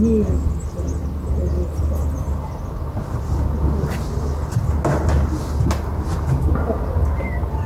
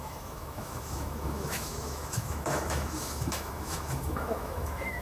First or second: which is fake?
second